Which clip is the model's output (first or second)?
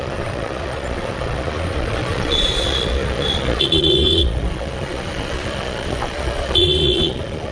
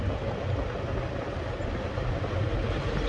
first